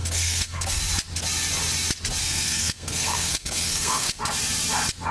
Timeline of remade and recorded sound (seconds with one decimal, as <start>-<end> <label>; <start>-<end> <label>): 0.0-0.8 remade; 0.8-2.2 recorded; 2.2-4.2 remade; 4.2-5.1 recorded